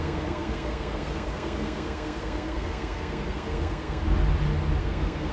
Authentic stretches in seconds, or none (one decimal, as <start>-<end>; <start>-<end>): 4.0-4.8